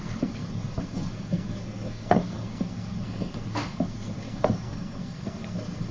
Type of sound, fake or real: fake